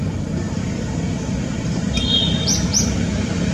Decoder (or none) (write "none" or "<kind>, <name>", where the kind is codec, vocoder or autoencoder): none